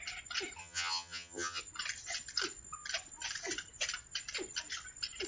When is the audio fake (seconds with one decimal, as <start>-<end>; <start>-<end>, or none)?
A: 0.6-1.6